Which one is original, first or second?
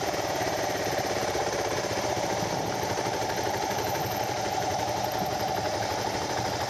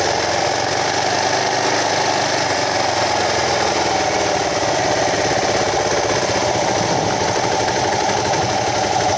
second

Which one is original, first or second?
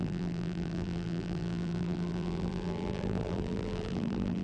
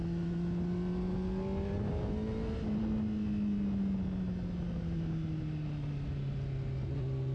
second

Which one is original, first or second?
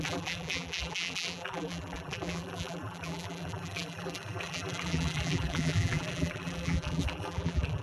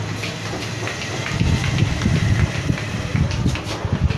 second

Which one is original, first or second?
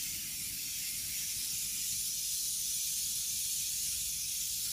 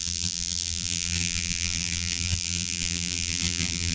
first